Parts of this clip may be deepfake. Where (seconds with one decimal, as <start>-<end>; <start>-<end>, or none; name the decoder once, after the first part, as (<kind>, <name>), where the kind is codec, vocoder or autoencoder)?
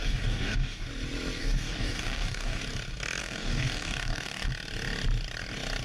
0.0-0.9 (codec, DAC); 1.4-2.6; 3.2-4.5